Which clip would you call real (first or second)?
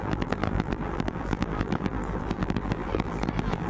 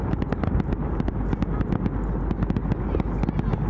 second